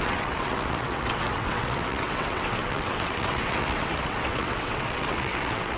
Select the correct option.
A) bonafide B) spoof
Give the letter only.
B